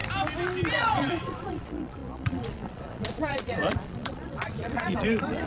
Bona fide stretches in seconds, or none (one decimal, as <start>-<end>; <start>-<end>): 0.0-0.7

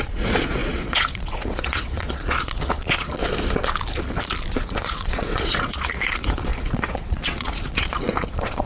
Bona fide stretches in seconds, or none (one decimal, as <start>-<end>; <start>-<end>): 3.2-4.5

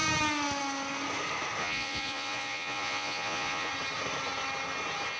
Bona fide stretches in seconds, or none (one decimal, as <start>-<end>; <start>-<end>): 0.0-1.6; 3.7-5.2

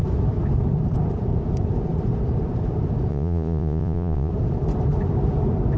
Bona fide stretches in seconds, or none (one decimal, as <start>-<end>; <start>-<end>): 0.0-3.1; 4.3-5.8

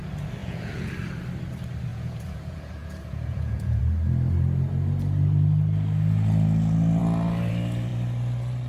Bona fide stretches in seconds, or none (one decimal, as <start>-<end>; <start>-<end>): 0.0-0.4; 0.9-1.9; 3.8-8.7

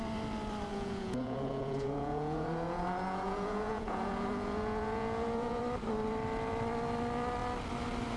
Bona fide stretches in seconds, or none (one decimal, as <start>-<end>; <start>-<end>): 0.0-0.7; 5.6-8.2